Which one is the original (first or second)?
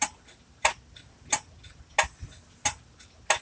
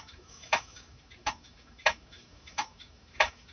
first